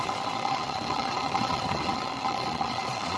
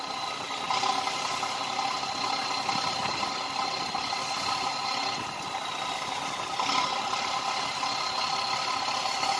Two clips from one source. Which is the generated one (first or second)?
first